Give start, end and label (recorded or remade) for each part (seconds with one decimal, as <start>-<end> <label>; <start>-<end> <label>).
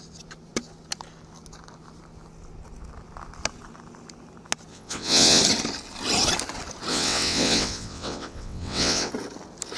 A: 0.0-4.7 recorded; 4.7-5.4 remade; 5.4-6.9 recorded; 6.9-9.1 remade; 9.1-9.8 recorded